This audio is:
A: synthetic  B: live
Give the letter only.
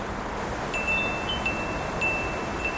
B